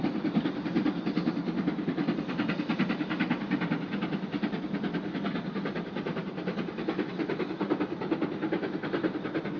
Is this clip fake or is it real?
real